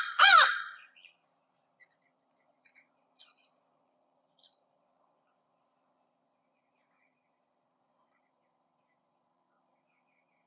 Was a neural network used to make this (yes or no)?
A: yes